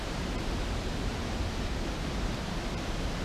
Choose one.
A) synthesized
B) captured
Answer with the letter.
A